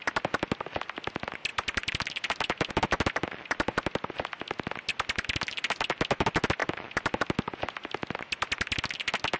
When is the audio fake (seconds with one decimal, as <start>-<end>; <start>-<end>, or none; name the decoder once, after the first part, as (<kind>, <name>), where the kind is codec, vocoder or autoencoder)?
1.5-2.7 (vocoder, BigVGAN v2); 4.9-5.6; 6.6-7.2